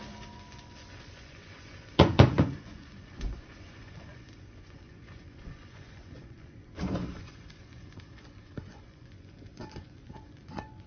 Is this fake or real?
fake